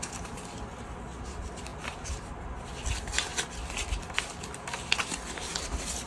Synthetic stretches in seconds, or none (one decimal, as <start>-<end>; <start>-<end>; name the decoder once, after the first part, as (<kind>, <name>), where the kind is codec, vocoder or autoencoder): none